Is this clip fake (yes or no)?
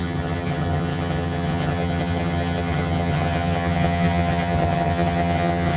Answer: yes